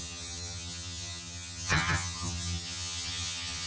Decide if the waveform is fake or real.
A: fake